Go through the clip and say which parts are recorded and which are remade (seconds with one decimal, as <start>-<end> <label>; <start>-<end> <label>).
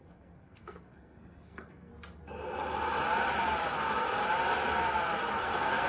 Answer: 0.0-1.9 remade; 1.9-5.4 recorded; 5.4-5.9 remade